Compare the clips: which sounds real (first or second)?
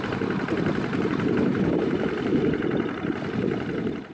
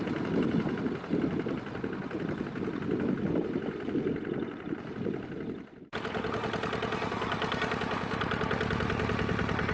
second